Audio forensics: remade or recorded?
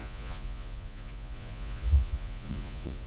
remade